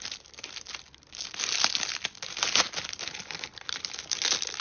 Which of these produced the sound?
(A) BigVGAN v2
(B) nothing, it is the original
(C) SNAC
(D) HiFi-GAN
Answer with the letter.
B